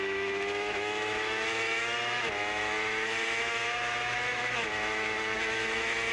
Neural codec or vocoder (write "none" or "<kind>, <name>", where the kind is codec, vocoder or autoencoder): autoencoder, DAC-VAE